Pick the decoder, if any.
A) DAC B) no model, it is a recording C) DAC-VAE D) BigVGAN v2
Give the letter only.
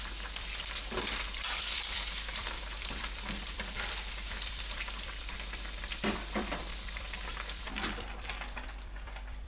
D